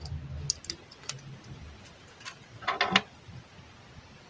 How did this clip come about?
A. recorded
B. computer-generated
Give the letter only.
A